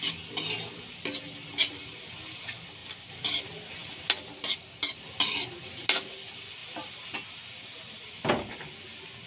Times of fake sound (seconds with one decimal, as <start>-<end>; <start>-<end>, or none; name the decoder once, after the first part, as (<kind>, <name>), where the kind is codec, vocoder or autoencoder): 1.5-2.4 (vocoder, BigVGAN v2); 2.8-3.4